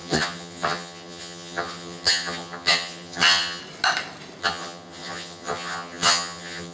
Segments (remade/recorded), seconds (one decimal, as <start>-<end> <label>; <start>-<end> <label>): 0.0-3.6 remade; 3.6-4.4 recorded; 4.4-6.7 remade